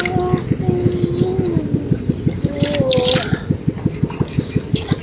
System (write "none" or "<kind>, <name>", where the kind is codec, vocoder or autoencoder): none